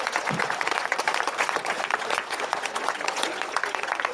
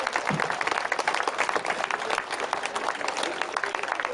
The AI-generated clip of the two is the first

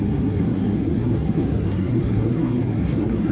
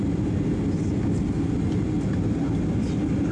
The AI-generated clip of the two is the first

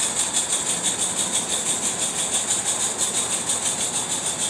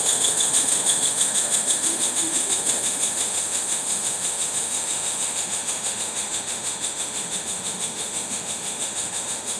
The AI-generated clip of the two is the second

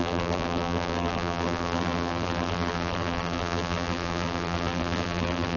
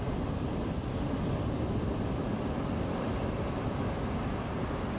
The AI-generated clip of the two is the first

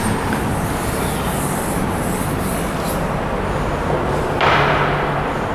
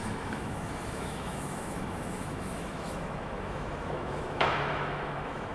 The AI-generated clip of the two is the second